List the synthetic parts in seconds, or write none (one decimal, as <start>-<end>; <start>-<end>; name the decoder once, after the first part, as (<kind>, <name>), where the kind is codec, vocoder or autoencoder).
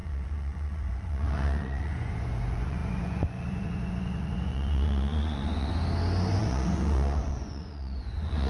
0.0-5.7 (vocoder, Vocos); 6.4-8.5